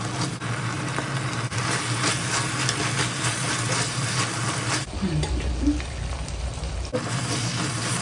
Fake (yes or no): no